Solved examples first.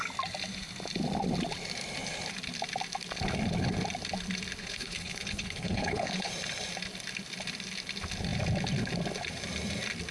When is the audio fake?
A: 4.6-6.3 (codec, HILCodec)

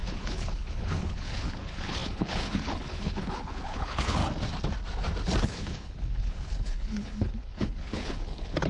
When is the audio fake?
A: 0.0-4.2 (codec, HILCodec); 5.4-8.7

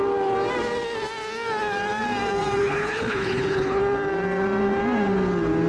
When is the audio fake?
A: 2.6-3.8 (codec, HILCodec)

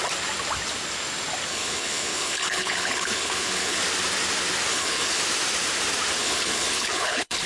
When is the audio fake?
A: 1.5-3.8 (codec, HILCodec); 4.7-5.2; 6.2-7.5

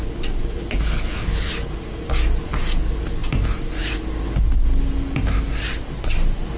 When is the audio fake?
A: 0.4-1.7 (codec, HILCodec)